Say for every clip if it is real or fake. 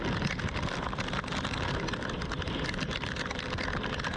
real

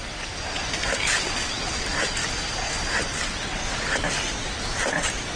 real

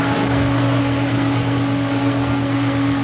fake